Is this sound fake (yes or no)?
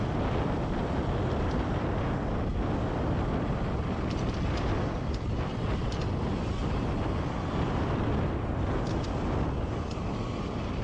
no